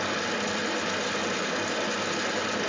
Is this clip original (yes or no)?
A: yes